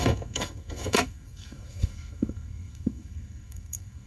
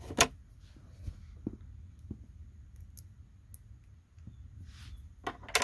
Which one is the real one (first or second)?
second